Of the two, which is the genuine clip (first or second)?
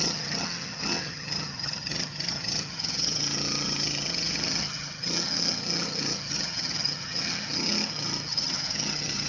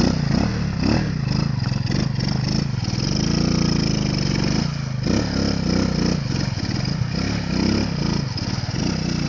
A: second